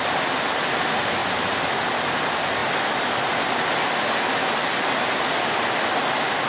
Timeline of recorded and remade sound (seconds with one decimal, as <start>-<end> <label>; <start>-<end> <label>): 0.0-6.5 recorded